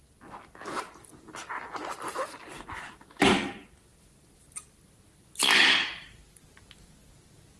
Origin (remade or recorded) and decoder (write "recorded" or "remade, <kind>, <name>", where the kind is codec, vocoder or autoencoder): recorded